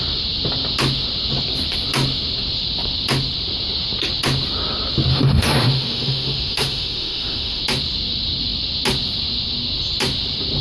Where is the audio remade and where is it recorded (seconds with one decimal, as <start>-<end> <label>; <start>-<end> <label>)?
0.0-5.1 recorded; 5.1-7.6 remade; 7.6-10.6 recorded